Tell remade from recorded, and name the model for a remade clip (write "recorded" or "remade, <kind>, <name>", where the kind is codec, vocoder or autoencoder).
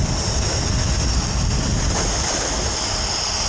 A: recorded